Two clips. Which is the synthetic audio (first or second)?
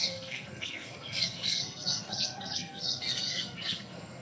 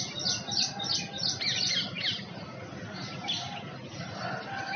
first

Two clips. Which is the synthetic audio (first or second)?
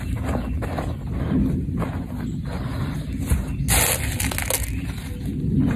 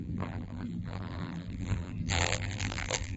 second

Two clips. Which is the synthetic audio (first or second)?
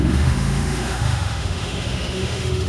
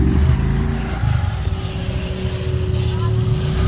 first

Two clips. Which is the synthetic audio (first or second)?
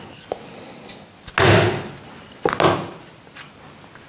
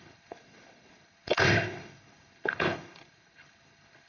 second